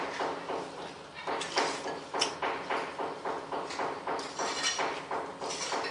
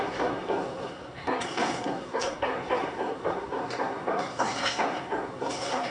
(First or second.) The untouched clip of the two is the first